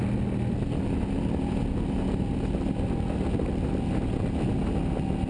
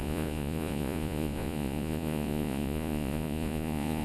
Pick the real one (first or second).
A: first